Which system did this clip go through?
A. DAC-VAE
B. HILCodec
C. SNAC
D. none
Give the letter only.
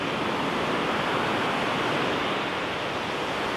D